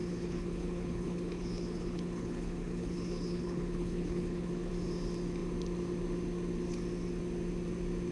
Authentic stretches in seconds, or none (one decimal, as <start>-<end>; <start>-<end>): 4.7-8.1